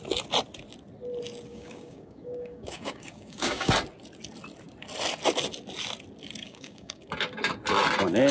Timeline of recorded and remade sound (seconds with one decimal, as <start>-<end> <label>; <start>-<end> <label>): 0.0-1.5 recorded; 1.5-3.7 remade; 3.7-6.4 recorded; 6.4-7.1 remade; 7.1-8.3 recorded